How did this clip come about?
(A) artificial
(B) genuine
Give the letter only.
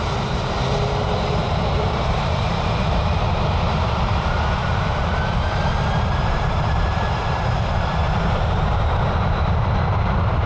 A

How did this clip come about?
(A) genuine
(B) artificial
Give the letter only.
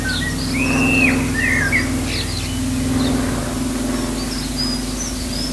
A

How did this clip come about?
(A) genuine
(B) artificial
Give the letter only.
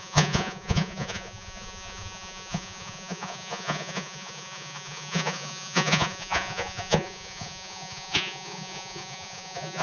B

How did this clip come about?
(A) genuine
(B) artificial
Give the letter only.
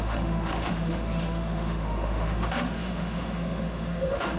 B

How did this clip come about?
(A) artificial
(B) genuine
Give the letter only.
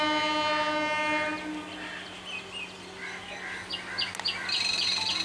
B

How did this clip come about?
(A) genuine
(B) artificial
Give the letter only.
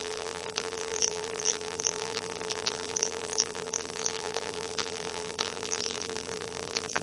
B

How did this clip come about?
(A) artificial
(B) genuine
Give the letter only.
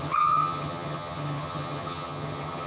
A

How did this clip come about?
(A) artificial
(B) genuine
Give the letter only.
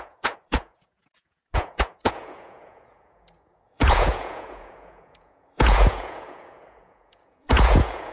A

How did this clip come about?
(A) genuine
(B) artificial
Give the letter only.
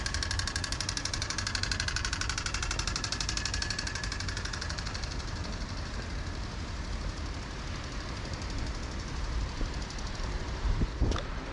B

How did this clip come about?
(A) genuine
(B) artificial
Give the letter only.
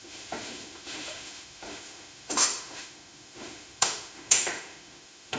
B